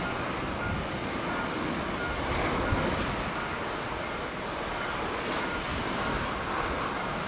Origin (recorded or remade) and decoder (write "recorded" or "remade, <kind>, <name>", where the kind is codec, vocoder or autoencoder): recorded